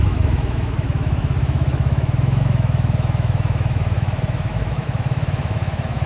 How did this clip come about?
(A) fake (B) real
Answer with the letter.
A